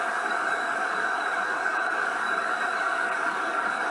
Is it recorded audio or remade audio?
remade